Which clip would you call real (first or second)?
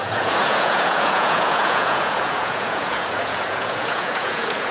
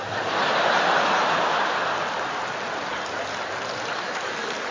second